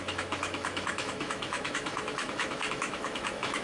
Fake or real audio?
fake